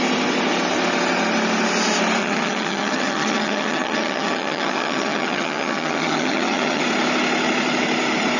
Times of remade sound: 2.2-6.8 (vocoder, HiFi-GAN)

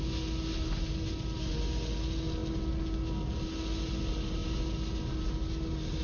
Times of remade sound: none

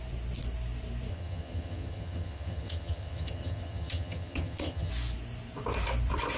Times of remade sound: 1.1-4.9 (vocoder, HiFi-GAN)